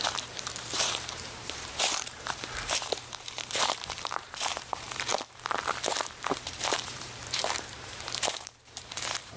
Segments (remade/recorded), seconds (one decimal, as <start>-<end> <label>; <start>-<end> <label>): 0.0-5.1 remade; 5.1-5.9 recorded; 5.9-9.4 remade